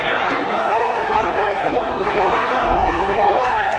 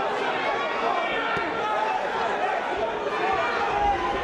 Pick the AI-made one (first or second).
first